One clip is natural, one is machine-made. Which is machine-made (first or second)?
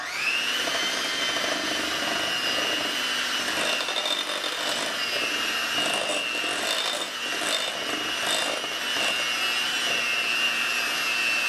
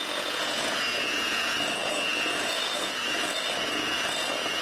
second